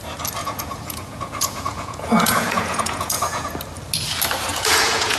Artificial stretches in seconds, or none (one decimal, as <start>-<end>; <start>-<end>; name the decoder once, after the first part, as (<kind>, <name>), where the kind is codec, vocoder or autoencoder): 0.4-3.5 (vocoder, Vocos); 4.5-5.2